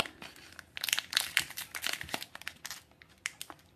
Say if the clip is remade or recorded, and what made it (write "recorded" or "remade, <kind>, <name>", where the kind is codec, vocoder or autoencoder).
recorded